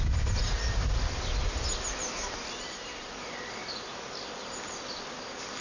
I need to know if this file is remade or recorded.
recorded